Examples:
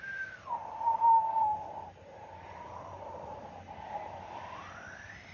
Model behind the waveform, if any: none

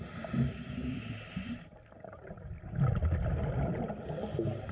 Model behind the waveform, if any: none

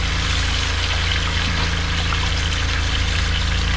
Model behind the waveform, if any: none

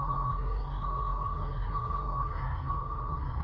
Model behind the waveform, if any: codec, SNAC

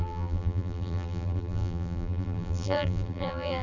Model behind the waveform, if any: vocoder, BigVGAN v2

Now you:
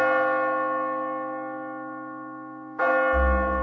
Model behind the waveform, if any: none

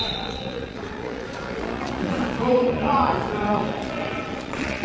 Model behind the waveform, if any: vocoder, Vocos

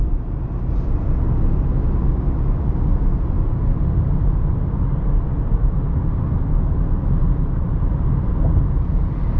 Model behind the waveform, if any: none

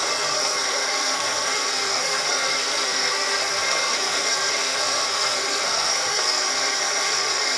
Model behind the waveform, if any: codec, SNAC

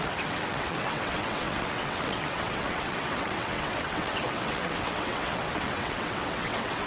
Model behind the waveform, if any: vocoder, WaveNeXt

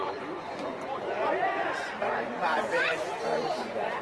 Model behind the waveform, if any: vocoder, Vocos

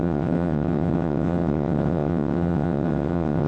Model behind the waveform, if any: vocoder, WaveNeXt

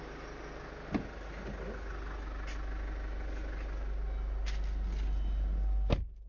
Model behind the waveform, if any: none